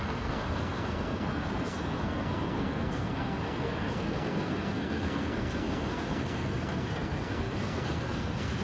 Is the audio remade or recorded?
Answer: remade